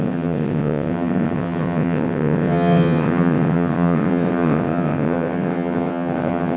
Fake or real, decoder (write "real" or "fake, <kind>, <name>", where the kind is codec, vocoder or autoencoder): fake, vocoder, WaveNeXt